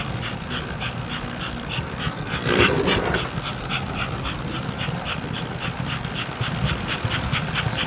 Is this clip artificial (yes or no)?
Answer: no